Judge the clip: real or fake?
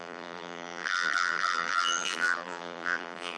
fake